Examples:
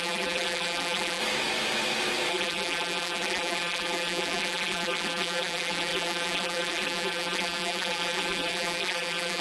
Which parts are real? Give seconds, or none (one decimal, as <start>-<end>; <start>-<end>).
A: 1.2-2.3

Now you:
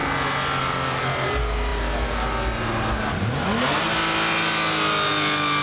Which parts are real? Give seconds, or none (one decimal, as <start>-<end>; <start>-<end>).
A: 0.0-5.6

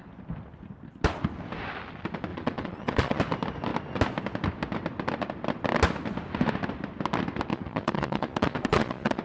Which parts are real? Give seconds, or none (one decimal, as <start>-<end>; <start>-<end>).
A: 0.0-2.3; 3.2-7.5